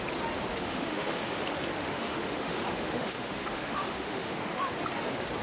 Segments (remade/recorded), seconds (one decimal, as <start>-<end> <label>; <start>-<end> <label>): 0.0-0.5 recorded; 0.5-1.2 remade; 1.2-1.8 recorded; 1.8-4.7 remade; 4.7-5.4 recorded